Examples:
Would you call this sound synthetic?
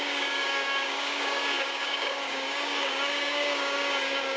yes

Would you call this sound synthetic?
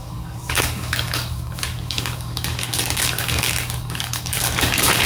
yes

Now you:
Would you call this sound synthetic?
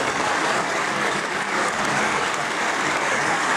yes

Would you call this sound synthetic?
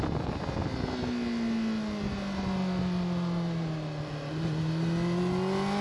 no